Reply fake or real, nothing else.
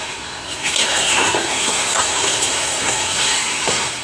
fake